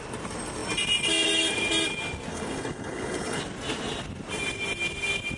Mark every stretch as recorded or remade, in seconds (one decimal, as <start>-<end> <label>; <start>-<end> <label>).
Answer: 0.0-2.3 recorded; 2.3-3.4 remade; 3.4-5.4 recorded